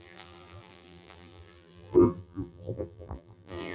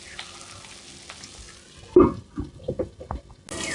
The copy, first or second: first